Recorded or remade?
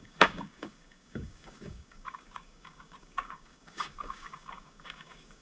remade